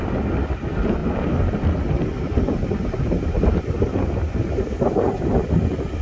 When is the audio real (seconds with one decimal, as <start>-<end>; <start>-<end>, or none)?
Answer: 0.0-6.0